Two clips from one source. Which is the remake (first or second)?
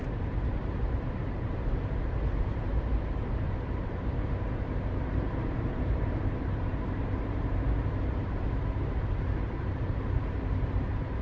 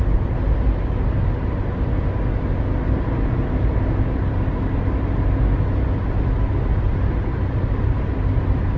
first